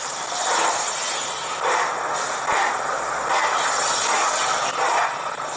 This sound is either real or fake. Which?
real